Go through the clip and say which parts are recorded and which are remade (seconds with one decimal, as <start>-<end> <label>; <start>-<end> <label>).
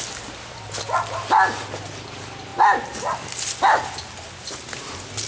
0.0-5.3 recorded